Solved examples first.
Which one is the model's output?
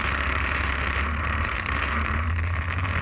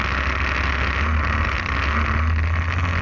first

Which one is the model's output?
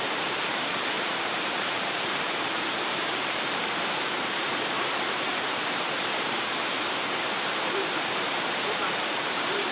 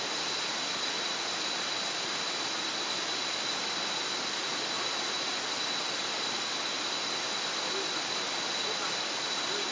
first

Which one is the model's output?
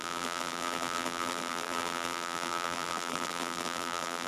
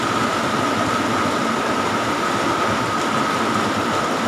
first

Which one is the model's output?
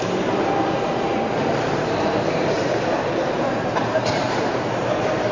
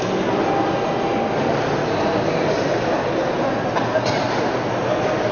first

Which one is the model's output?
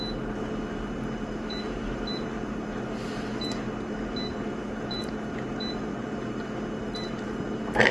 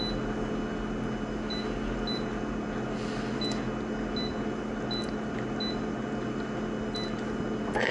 first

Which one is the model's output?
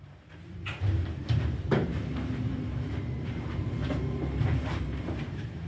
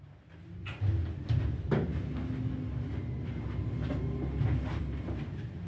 first